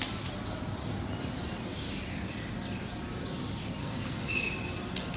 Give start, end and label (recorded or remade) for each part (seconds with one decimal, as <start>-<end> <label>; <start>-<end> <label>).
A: 0.0-3.8 recorded; 3.8-4.5 remade; 4.5-5.2 recorded